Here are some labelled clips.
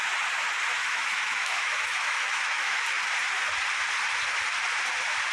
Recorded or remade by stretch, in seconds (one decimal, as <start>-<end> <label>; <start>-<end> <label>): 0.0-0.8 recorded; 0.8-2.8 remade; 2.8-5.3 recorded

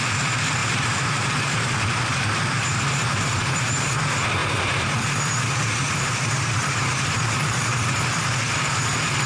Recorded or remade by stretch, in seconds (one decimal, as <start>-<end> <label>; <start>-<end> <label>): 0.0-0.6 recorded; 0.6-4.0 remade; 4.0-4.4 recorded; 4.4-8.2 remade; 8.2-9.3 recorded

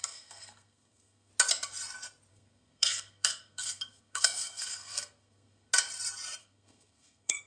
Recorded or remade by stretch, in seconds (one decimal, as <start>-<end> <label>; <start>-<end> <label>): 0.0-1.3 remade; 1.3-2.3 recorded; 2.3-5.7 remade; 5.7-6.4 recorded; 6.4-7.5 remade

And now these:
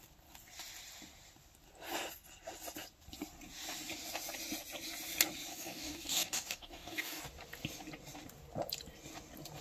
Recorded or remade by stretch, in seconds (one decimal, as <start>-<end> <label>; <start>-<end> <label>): 0.0-5.5 recorded; 5.5-7.2 remade; 7.2-9.6 recorded

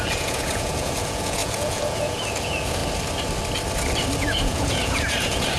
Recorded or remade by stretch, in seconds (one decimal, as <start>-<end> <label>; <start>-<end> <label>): 0.0-2.8 remade; 2.8-4.2 recorded; 4.2-5.6 remade